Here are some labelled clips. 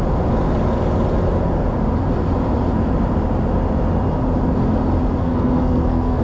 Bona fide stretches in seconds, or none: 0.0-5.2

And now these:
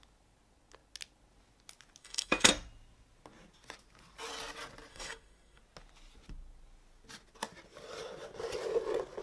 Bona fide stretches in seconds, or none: 0.0-2.0; 2.5-4.9; 5.6-9.2

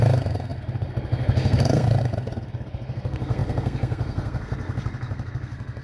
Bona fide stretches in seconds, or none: none

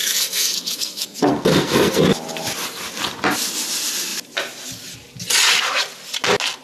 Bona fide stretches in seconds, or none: 2.0-6.6

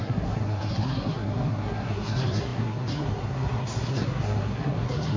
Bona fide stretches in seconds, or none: none